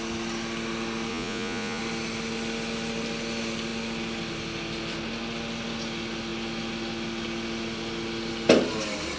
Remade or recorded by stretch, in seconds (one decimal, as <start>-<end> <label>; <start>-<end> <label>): 0.0-1.1 recorded; 1.1-1.8 remade; 1.8-9.2 recorded